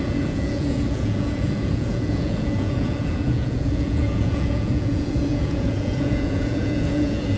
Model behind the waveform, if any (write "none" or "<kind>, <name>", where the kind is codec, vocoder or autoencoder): vocoder, Vocos